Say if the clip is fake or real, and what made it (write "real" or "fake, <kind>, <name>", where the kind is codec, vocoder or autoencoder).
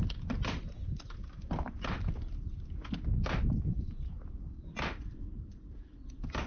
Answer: real